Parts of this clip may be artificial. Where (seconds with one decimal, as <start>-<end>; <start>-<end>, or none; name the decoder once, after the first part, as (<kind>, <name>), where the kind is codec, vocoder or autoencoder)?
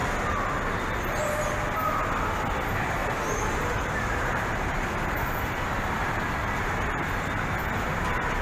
3.0-7.2 (vocoder, BigVGAN v2)